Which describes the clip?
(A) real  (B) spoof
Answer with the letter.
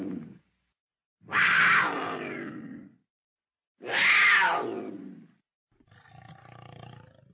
A